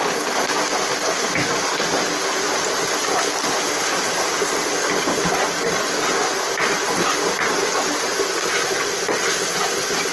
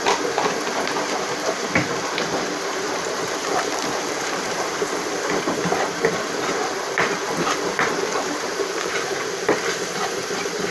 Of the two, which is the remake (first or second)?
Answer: second